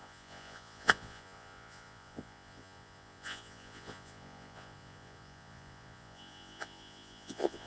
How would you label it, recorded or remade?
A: remade